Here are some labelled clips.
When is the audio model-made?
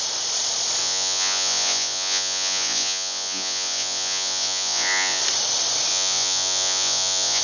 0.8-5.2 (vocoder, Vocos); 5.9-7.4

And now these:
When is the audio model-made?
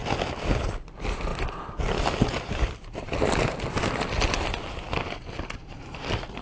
none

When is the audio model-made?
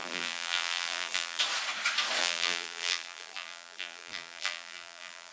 0.0-1.4 (vocoder, BigVGAN v2); 2.2-5.3